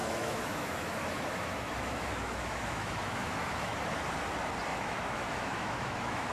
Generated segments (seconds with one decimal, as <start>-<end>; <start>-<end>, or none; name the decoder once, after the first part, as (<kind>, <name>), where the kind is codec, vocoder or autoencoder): 0.0-3.8 (autoencoder, DAC-VAE); 4.7-6.3

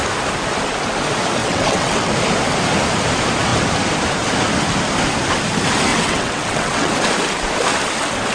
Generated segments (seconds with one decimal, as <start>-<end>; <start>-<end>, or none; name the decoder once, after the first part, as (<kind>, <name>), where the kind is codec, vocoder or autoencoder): 1.4-2.1 (vocoder, WaveNeXt); 5.9-6.9

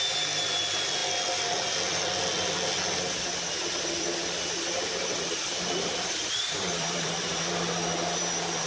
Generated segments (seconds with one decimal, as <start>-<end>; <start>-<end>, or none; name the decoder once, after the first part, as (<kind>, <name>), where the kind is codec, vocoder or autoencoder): 6.2-7.5 (vocoder, BigVGAN v2)